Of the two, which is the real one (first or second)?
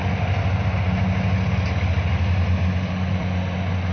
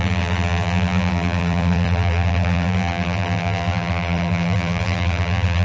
first